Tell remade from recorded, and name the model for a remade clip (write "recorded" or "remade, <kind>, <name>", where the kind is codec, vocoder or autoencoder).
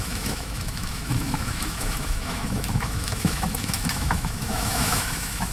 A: remade, autoencoder, DAC-VAE